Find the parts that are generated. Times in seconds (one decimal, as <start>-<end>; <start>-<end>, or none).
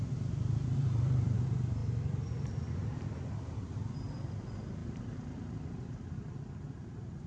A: 0.0-1.8; 3.2-7.3